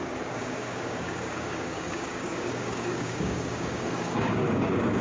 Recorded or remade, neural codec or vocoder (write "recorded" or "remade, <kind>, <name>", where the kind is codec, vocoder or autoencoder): remade, codec, DAC